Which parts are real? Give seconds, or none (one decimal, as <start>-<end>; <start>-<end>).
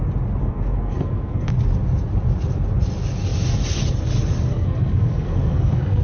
0.0-0.4; 1.5-4.5